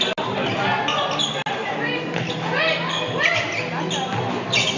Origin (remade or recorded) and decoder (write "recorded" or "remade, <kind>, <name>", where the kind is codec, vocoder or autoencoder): recorded